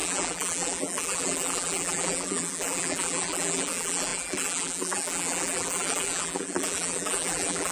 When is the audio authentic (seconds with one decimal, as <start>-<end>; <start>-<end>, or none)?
none